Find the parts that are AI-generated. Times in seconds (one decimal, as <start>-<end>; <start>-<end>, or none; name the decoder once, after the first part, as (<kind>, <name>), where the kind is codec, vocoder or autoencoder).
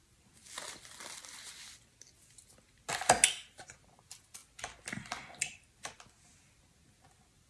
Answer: none